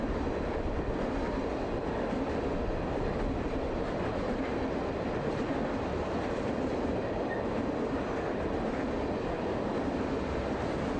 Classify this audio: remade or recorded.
recorded